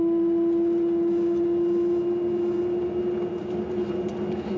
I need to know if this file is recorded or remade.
recorded